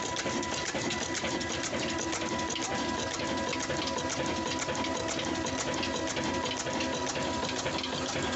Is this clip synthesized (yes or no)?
no